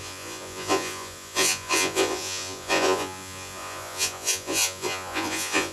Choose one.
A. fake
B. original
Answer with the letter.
A